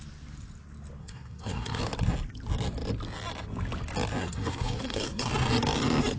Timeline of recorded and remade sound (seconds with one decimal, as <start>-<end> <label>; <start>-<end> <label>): 0.0-1.0 recorded; 1.0-1.8 remade; 1.8-4.2 recorded; 4.2-5.3 remade; 5.3-6.2 recorded